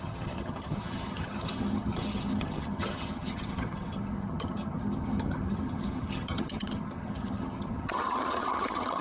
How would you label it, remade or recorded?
remade